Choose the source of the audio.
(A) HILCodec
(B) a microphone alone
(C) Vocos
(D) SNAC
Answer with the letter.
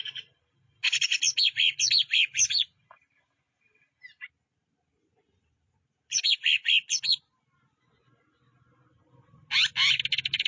B